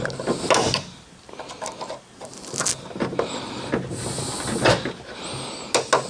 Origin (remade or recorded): recorded